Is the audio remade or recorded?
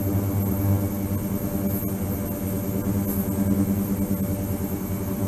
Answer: recorded